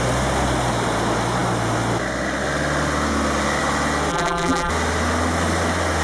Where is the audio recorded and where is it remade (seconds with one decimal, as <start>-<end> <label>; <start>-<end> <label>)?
0.0-4.1 recorded; 4.1-4.7 remade; 4.7-6.0 recorded